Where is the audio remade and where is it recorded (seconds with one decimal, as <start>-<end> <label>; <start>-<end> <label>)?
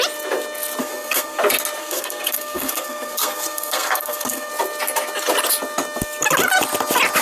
0.0-0.8 recorded; 0.8-1.4 remade; 1.4-1.8 recorded; 1.8-4.5 remade; 4.5-7.2 recorded